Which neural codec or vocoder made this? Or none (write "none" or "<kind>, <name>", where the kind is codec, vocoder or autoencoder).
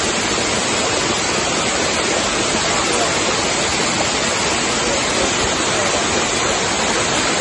none